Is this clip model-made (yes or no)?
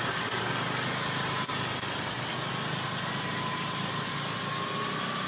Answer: yes